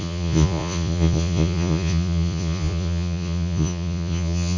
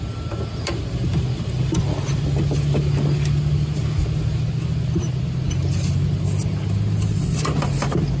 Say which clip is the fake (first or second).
first